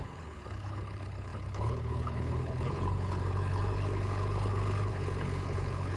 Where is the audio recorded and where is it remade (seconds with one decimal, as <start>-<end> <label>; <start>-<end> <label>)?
0.0-6.0 remade